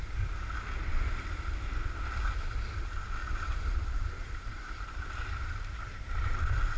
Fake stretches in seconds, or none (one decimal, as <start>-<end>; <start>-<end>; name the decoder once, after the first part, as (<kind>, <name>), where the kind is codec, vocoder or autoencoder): 3.2-5.2 (vocoder, BigVGAN v2)